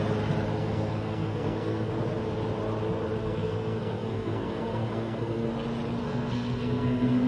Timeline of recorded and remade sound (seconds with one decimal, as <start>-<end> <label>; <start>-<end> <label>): 0.0-0.6 recorded; 0.6-1.9 remade; 1.9-3.2 recorded; 3.2-5.5 remade; 5.5-6.0 recorded; 6.0-7.3 remade